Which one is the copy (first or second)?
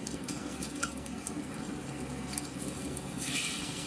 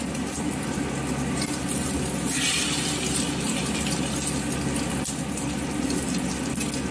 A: first